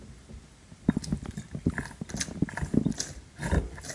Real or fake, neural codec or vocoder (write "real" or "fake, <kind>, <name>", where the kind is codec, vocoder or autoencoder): real